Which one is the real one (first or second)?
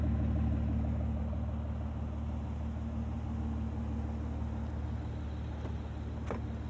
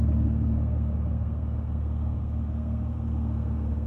first